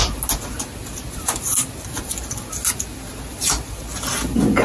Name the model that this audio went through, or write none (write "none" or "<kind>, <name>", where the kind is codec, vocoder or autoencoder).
none